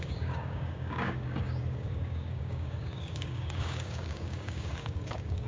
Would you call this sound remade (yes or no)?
yes